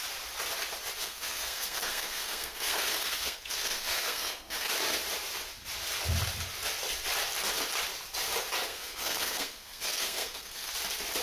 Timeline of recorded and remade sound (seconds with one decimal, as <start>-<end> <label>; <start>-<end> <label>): 0.0-1.0 recorded; 1.0-4.7 remade; 4.7-8.7 recorded; 8.7-10.7 remade; 10.7-11.2 recorded